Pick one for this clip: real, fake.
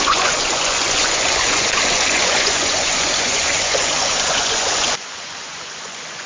fake